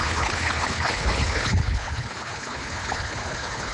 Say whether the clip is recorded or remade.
remade